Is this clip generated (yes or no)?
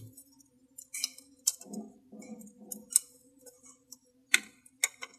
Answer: no